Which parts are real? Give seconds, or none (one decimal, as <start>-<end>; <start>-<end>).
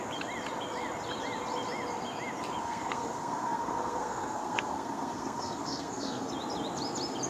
0.0-2.6; 6.3-7.3